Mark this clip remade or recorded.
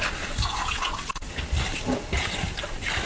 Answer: recorded